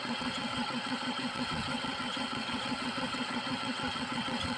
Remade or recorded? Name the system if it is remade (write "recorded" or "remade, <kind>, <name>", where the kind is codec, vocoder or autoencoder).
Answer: remade, vocoder, WaveNeXt